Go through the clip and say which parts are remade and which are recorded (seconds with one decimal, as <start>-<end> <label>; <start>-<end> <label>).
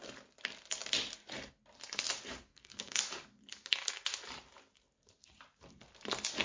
0.0-2.5 recorded; 2.5-3.0 remade; 3.0-6.4 recorded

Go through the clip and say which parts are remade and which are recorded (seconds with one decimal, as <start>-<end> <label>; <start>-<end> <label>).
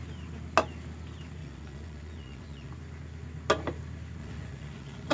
0.0-1.4 recorded; 1.4-2.7 remade; 2.7-4.2 recorded; 4.2-5.1 remade